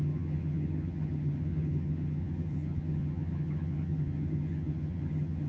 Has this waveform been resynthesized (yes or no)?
yes